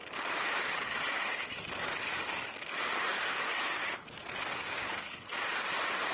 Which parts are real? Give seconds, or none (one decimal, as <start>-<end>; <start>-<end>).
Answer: 0.0-6.1